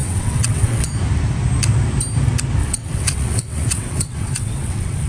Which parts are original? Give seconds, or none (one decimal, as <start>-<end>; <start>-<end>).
0.9-2.6